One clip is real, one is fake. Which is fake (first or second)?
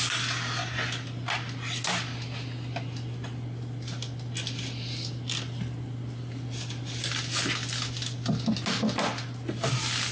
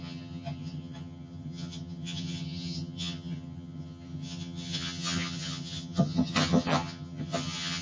second